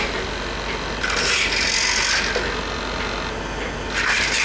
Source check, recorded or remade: recorded